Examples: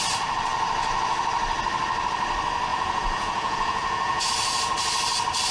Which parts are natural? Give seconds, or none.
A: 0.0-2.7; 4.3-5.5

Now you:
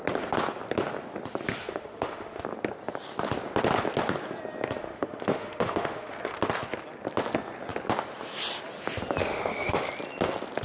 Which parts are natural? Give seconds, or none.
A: 0.0-1.6; 2.4-4.8; 6.4-9.2; 9.9-10.6

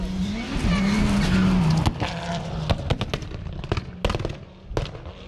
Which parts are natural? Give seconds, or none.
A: 0.0-5.3

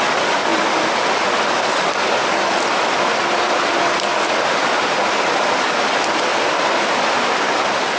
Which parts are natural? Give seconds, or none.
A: 0.0-8.0

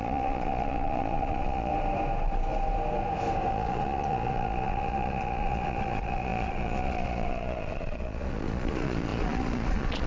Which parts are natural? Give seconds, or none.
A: 1.7-3.5

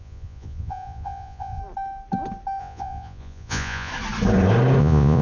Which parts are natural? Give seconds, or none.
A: 1.6-2.6; 3.9-4.8

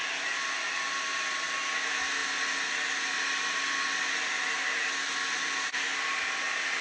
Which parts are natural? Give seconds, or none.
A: 0.0-6.8

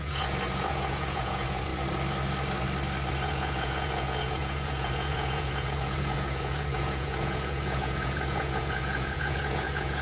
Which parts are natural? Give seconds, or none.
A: 1.7-3.1